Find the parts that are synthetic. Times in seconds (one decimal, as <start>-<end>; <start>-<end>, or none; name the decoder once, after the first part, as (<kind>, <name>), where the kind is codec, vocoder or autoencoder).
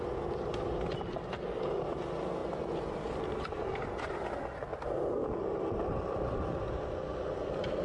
none